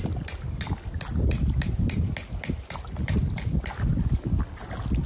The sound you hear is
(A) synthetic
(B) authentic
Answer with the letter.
B